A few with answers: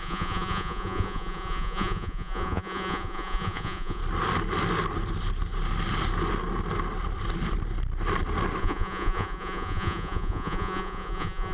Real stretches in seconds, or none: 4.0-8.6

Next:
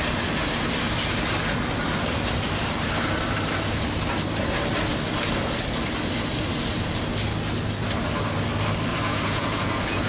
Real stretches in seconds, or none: 0.0-8.9

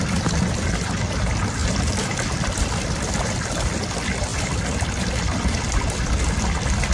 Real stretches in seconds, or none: 0.0-6.9

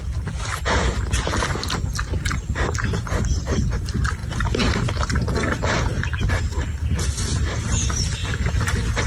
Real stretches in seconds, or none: 0.0-9.1